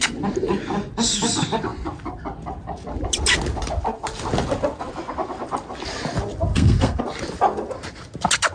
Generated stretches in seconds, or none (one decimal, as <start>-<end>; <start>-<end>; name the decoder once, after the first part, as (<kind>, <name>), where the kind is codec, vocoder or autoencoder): 6.5-7.0 (codec, SNAC)